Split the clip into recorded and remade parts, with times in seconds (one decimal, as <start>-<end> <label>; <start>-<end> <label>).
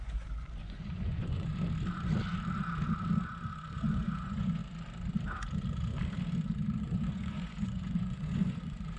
0.0-1.5 remade; 1.5-3.7 recorded; 3.7-4.6 remade; 4.6-6.8 recorded; 6.8-9.0 remade